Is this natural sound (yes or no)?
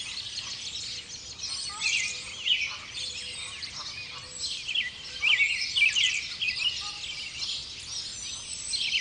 yes